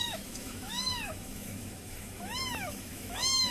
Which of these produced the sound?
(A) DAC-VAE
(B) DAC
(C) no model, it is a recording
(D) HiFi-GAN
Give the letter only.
A